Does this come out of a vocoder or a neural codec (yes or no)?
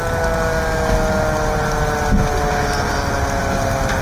no